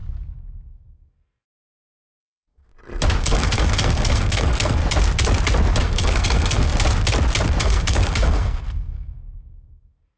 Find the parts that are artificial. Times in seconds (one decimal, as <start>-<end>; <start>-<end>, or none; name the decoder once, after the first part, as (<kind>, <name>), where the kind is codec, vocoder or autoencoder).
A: 0.7-2.7 (codec, SNAC); 3.2-4.8; 5.8-6.7; 7.6-10.2